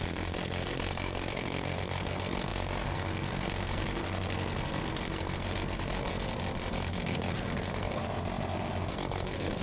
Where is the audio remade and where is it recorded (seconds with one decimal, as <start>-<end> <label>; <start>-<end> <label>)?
0.0-6.1 remade; 6.1-6.7 recorded; 6.7-8.0 remade; 8.0-8.9 recorded; 8.9-9.6 remade